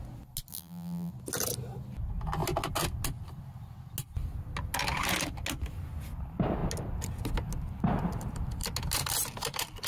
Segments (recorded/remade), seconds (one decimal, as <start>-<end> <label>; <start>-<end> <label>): 0.0-0.5 recorded; 0.5-1.1 remade; 1.1-9.9 recorded